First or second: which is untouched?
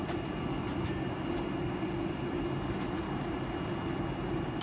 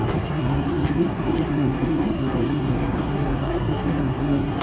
first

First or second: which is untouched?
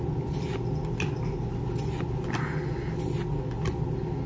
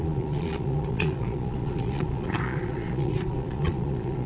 first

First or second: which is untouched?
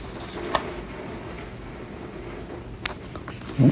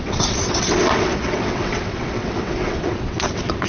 first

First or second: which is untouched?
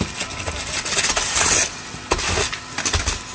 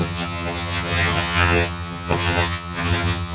first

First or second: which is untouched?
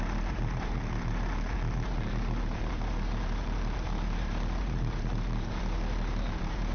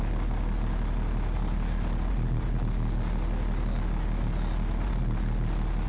second